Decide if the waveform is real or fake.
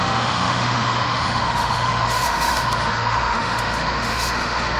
fake